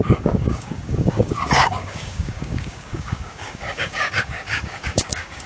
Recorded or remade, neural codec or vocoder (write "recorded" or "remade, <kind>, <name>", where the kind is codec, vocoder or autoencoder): remade, codec, DAC